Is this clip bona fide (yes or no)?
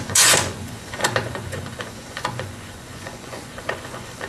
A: no